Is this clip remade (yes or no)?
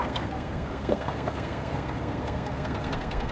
yes